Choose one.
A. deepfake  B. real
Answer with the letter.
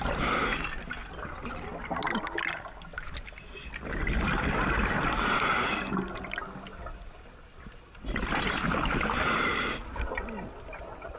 B